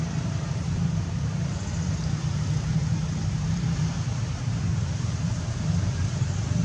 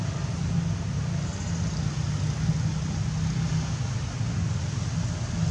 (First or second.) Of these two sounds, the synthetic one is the first